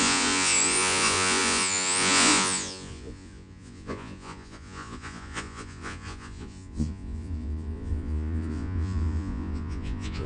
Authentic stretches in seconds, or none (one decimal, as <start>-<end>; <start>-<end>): none